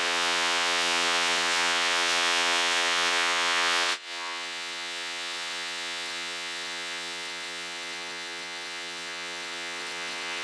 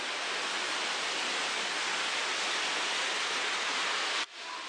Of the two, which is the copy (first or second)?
first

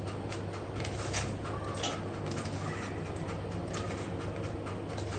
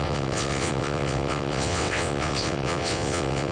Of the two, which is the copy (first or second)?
second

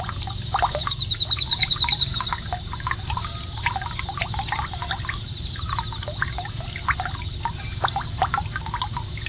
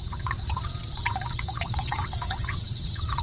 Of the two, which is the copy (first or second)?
second